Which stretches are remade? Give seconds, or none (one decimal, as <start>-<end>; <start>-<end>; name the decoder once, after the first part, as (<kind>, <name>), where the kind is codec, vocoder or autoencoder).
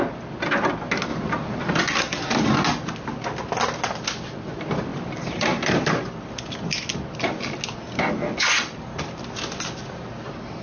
1.1-1.8 (vocoder, BigVGAN v2); 4.9-6.0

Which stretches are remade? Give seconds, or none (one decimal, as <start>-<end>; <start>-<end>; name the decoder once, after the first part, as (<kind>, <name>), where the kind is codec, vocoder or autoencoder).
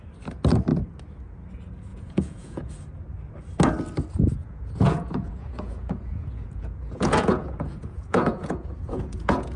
1.9-2.7 (vocoder, Vocos); 4.4-9.6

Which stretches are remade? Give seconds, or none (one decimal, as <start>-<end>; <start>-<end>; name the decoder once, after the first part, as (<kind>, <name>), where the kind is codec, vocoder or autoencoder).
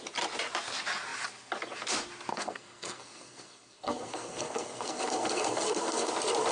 2.3-6.1 (codec, SNAC)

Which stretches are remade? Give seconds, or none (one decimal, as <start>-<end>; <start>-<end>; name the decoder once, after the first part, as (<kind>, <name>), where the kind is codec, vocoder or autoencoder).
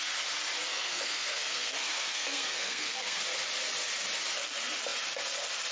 0.7-3.2 (codec, SNAC)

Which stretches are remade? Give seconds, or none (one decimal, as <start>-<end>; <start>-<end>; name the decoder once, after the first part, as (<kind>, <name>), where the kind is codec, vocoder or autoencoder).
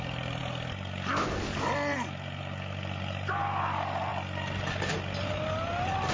none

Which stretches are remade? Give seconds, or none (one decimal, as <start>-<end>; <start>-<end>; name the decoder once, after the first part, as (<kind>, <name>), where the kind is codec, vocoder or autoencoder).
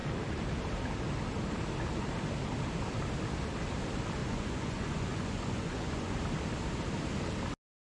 4.2-6.2 (vocoder, Vocos)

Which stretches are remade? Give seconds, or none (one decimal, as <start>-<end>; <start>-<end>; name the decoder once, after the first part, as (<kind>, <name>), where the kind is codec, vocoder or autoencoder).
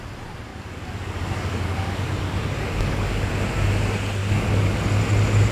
0.5-3.3 (codec, DAC); 4.2-4.8